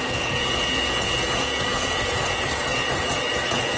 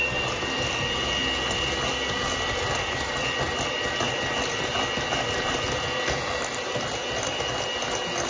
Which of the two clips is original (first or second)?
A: second